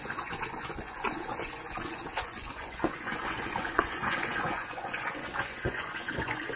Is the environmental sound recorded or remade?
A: remade